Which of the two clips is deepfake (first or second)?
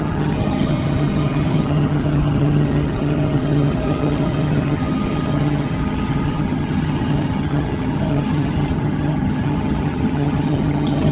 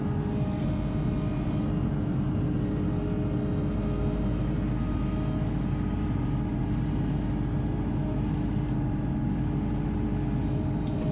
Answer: first